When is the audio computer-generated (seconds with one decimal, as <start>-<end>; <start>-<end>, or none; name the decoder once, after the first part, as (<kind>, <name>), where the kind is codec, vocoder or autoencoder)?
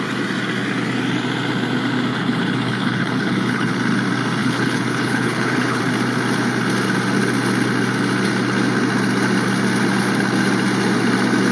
2.1-3.8 (codec, HILCodec); 4.4-5.8